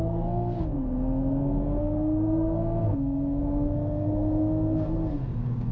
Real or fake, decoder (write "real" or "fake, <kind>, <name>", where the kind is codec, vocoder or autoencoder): fake, codec, SNAC